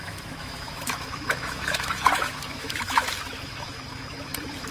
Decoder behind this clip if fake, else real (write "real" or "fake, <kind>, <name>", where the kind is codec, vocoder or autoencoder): fake, autoencoder, DAC-VAE